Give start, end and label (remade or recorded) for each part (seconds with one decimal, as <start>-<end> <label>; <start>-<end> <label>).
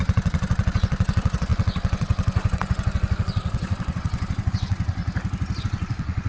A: 0.0-5.0 remade; 5.0-5.6 recorded; 5.6-6.3 remade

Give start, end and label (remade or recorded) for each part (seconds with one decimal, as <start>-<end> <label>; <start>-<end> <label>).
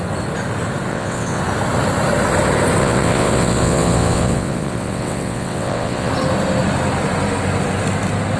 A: 0.0-0.9 recorded; 0.9-1.4 remade; 1.4-2.8 recorded; 2.8-6.1 remade; 6.1-8.4 recorded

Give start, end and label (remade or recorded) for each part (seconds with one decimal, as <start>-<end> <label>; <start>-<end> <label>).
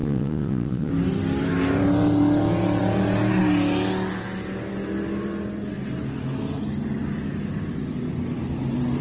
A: 0.0-0.9 remade; 0.9-9.0 recorded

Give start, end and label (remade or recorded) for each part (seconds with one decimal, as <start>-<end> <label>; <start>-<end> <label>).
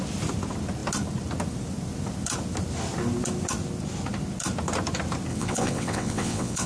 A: 0.0-5.3 recorded; 5.3-6.7 remade